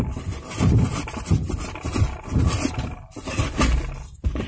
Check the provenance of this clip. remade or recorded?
recorded